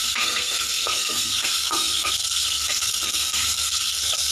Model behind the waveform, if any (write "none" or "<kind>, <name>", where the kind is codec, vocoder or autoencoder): codec, SNAC